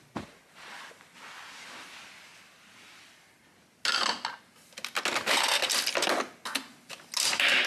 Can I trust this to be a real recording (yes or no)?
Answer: yes